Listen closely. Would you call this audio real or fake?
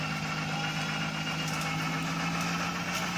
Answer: real